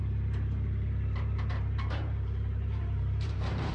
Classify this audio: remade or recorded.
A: remade